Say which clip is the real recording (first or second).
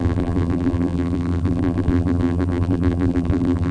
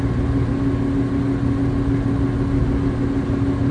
second